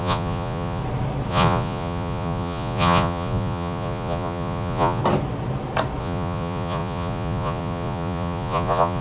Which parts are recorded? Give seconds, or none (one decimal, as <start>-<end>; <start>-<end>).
0.8-1.3; 5.0-6.0